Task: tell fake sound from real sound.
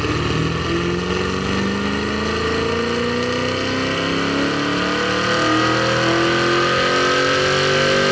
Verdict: real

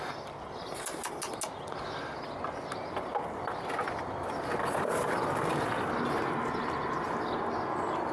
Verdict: real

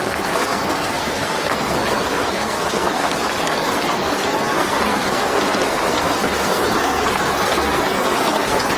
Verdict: fake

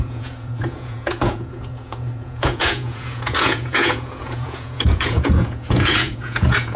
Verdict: fake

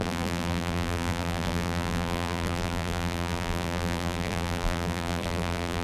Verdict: fake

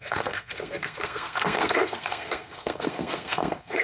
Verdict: fake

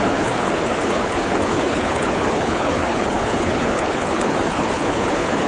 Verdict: fake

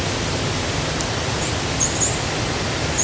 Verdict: real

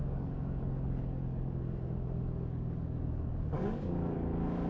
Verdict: fake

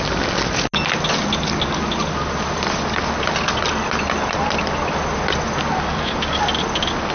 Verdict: real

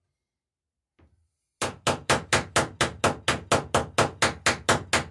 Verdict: real